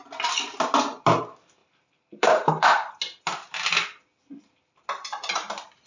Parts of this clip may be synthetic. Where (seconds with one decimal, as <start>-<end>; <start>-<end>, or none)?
1.6-2.9